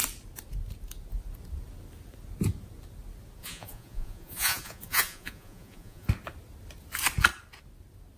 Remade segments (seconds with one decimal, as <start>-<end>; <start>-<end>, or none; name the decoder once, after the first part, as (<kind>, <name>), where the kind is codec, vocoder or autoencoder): 3.4-6.1 (vocoder, Vocos)